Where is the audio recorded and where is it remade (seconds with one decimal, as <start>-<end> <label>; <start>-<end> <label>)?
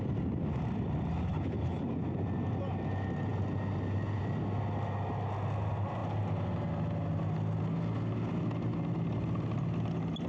0.0-1.3 recorded; 1.3-1.8 remade; 1.8-10.3 recorded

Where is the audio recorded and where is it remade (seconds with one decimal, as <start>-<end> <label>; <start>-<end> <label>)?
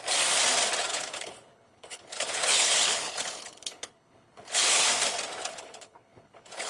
0.0-0.9 recorded; 0.9-4.9 remade; 4.9-5.4 recorded; 5.4-6.7 remade